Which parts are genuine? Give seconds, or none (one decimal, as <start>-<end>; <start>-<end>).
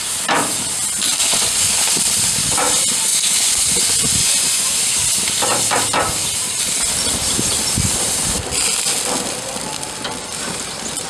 0.0-1.2; 1.8-3.1; 4.8-11.1